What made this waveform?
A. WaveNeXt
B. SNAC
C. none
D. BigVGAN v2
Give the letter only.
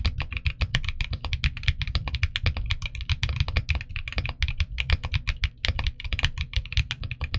C